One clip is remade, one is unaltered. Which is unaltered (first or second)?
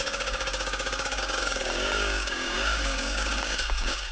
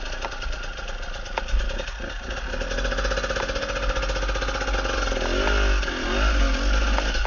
second